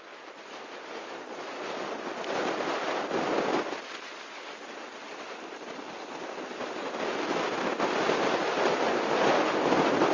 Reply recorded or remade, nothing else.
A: recorded